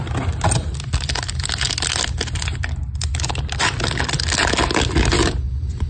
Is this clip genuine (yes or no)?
yes